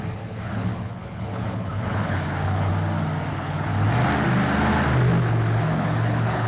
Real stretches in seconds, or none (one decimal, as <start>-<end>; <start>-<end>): 2.7-3.3; 3.7-5.2